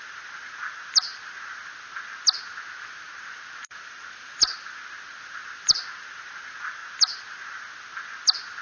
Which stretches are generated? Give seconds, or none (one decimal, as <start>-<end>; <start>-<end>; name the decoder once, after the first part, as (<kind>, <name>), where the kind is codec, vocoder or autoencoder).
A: none